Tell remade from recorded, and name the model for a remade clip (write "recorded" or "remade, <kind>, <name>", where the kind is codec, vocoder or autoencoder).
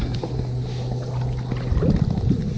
recorded